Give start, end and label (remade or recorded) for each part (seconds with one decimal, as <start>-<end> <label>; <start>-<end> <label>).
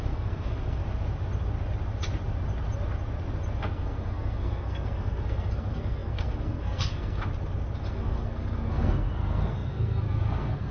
0.0-0.8 remade; 0.8-3.6 recorded; 3.6-7.3 remade; 7.3-7.8 recorded; 7.8-10.7 remade